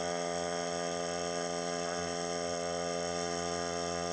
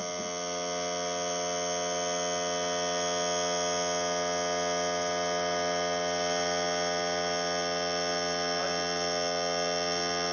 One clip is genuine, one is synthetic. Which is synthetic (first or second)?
first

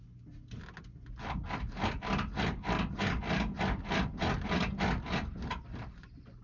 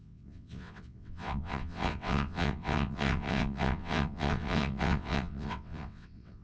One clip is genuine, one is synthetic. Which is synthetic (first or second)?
second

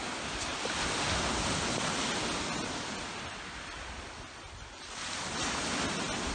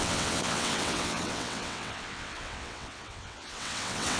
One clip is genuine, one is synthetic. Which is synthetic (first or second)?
second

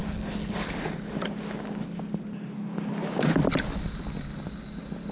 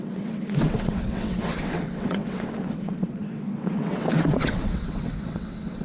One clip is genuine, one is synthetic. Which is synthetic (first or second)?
second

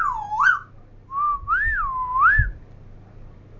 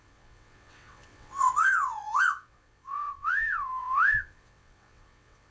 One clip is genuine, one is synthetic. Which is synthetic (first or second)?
second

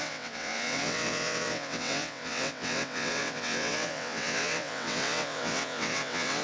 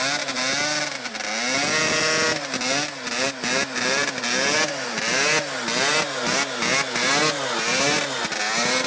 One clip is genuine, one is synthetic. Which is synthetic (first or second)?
first